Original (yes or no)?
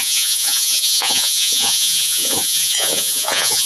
no